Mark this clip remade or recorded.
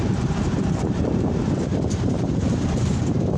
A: remade